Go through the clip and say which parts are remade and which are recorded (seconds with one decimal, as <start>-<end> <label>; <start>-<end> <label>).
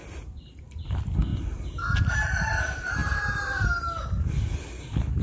0.0-5.2 recorded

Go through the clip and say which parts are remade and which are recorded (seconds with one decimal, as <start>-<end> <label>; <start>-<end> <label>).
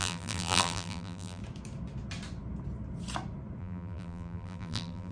0.0-1.4 remade; 1.4-3.6 recorded; 3.6-5.1 remade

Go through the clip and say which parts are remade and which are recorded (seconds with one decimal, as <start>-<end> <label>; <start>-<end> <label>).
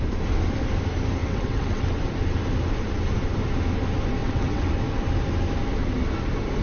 0.0-1.2 recorded; 1.2-2.0 remade; 2.0-4.2 recorded; 4.2-4.7 remade; 4.7-6.6 recorded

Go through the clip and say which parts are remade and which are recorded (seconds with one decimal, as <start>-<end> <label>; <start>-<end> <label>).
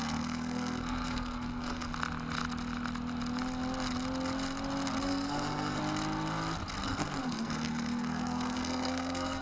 0.0-1.9 remade; 1.9-5.0 recorded; 5.0-5.8 remade; 5.8-6.8 recorded; 6.8-9.4 remade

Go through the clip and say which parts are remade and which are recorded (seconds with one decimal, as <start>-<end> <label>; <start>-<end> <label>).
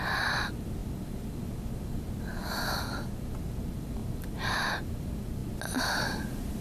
0.0-6.6 recorded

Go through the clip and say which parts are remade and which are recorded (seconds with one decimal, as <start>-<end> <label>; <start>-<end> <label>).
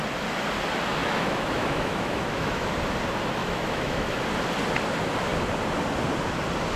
0.0-1.0 recorded; 1.0-2.7 remade; 2.7-3.4 recorded; 3.4-4.2 remade; 4.2-6.8 recorded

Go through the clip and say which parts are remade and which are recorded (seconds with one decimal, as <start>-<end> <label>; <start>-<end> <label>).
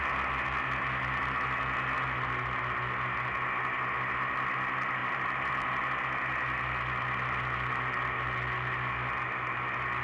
0.0-5.0 recorded; 5.0-5.5 remade; 5.5-10.0 recorded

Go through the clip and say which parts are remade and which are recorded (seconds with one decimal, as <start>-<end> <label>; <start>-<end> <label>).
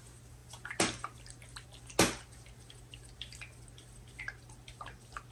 0.0-5.3 recorded